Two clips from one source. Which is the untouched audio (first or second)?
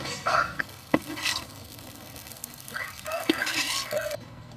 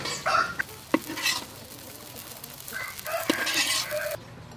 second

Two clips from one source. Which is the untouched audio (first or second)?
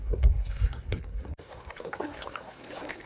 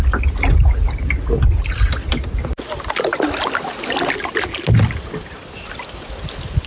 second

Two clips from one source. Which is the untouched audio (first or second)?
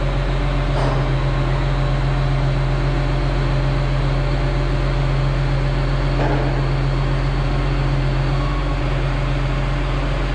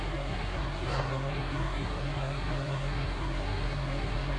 first